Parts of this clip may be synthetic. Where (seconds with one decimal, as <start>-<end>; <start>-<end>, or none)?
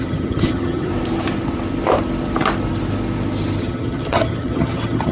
0.0-0.9; 3.6-5.1